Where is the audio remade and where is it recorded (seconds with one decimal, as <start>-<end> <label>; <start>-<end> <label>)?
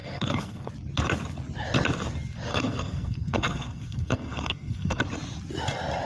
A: 0.0-0.7 remade; 0.7-2.5 recorded; 2.5-5.0 remade; 5.0-6.1 recorded